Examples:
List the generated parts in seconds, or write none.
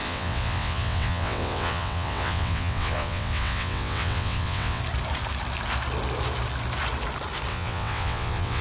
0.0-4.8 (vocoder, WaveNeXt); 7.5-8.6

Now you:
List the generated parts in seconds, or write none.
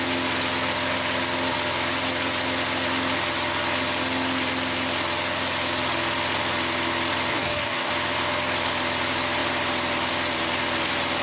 7.3-7.9 (codec, DAC)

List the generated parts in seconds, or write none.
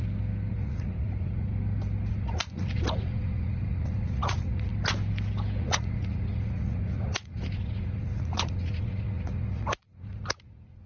0.5-1.5 (vocoder, Vocos); 2.1-4.7; 5.6-10.9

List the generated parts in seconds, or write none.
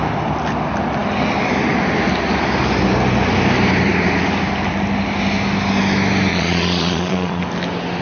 6.3-7.4 (vocoder, Vocos)